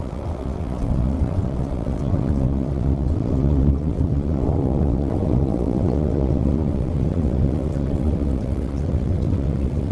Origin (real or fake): fake